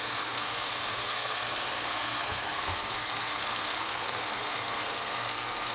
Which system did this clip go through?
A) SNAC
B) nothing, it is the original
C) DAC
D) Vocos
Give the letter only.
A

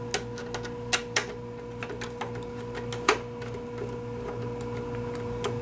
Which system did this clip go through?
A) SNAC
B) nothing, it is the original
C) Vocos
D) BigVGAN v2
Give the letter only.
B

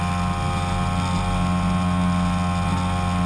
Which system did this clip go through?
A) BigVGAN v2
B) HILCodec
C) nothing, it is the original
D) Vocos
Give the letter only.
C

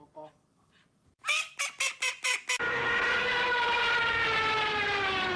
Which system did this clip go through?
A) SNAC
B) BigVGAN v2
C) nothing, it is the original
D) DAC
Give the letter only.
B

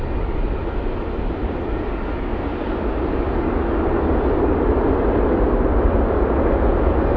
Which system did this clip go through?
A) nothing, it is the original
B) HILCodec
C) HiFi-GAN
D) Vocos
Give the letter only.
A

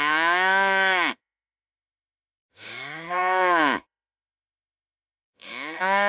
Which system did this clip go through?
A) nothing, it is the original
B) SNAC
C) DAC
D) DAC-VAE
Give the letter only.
D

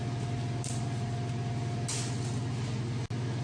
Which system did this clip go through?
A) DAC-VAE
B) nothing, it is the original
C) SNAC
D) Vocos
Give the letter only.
B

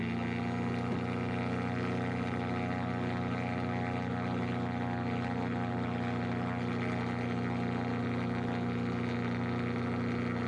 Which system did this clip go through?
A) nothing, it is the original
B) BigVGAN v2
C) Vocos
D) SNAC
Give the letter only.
A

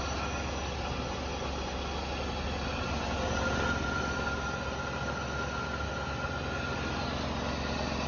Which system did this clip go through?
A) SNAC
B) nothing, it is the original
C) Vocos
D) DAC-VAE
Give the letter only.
B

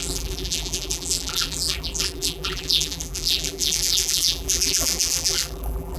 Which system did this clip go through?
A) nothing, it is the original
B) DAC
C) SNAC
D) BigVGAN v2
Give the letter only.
D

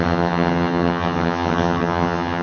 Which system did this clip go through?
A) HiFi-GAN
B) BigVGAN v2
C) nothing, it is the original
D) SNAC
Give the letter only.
A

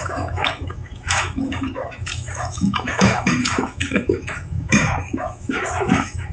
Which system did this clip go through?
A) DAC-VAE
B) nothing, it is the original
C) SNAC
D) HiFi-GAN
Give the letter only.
A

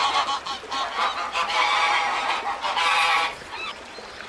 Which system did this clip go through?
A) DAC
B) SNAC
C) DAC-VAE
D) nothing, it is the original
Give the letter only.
D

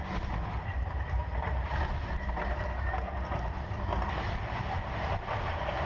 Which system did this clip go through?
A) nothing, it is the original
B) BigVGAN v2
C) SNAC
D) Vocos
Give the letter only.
B